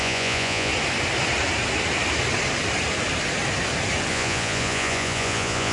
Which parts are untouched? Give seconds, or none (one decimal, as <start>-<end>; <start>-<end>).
0.7-4.1